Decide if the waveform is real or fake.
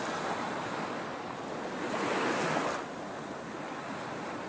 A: real